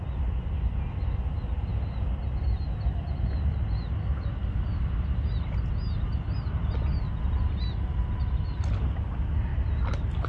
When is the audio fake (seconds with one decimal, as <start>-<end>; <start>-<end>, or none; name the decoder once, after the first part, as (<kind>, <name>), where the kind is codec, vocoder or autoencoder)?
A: none